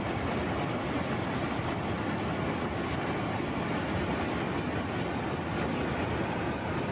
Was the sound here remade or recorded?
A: recorded